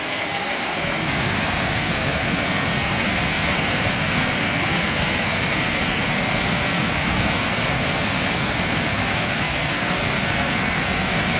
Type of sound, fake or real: fake